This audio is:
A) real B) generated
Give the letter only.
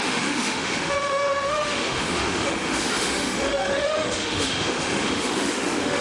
B